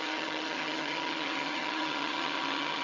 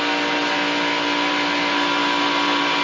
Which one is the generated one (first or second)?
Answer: first